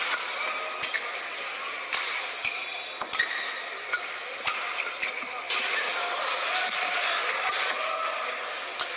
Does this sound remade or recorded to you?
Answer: recorded